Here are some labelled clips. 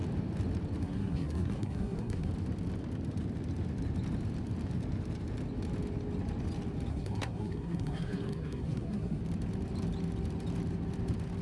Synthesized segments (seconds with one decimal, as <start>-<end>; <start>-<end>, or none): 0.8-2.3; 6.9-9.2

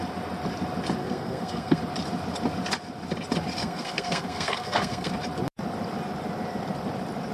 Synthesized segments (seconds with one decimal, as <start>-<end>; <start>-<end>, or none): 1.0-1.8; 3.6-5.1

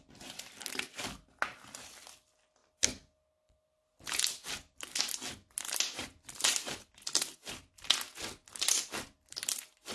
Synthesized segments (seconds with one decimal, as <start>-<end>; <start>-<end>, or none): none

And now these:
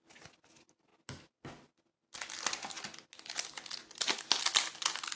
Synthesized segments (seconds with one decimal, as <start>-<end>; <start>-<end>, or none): none

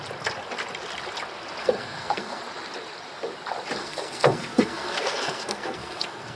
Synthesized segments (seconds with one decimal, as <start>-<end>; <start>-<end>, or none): 1.6-2.4; 3.8-6.4

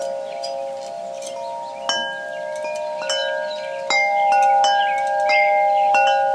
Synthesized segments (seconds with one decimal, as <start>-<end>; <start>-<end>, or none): none

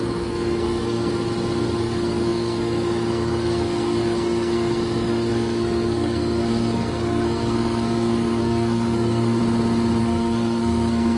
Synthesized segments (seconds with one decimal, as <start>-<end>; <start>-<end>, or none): 0.0-1.1; 1.8-9.4; 10.0-11.2

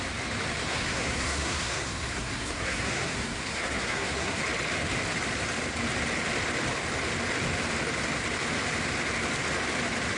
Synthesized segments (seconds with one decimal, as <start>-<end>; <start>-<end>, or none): 0.6-4.4